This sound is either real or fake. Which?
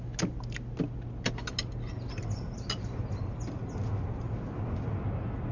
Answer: real